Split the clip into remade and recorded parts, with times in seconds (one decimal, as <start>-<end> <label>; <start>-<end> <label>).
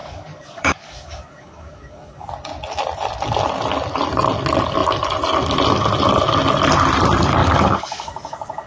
0.0-2.3 remade; 2.3-7.4 recorded; 7.4-8.7 remade